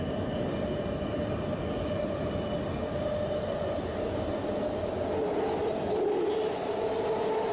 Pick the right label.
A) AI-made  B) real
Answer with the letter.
B